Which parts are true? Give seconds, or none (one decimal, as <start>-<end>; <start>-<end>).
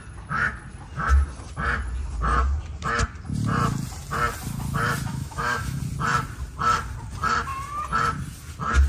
0.0-5.1; 5.8-8.9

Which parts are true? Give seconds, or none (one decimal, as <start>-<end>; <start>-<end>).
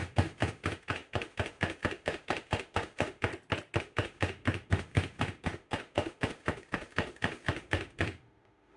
3.3-3.8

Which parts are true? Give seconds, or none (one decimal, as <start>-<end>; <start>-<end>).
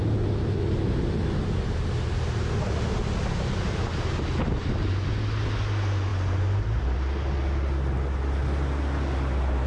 0.0-9.7